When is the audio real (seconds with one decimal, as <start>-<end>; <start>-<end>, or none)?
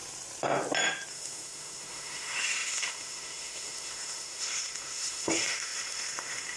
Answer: 0.0-1.1